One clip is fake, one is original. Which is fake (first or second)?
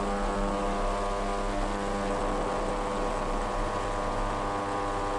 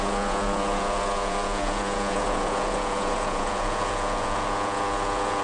second